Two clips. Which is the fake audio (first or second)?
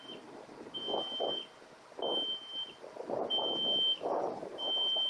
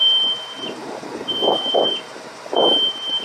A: second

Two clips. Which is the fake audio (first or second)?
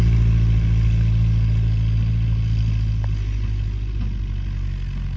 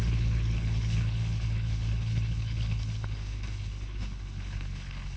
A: second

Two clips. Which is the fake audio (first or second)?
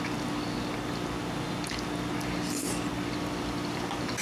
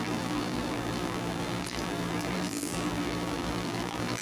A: second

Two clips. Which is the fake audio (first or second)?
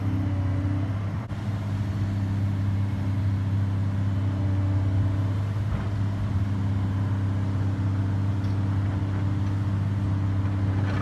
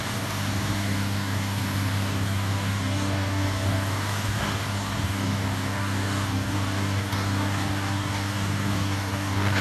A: second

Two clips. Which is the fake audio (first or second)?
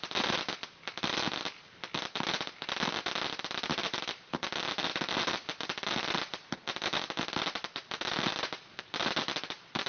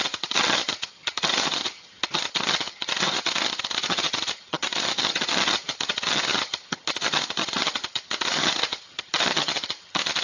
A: second